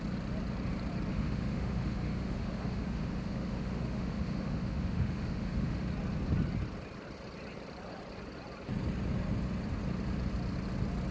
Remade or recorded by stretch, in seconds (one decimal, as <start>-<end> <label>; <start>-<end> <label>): 0.0-1.1 recorded; 1.1-5.9 remade; 5.9-11.1 recorded